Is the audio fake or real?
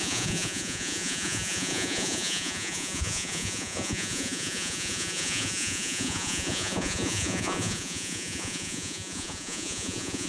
fake